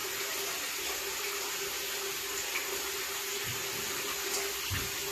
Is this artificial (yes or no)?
no